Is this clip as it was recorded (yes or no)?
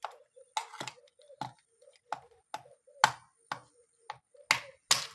yes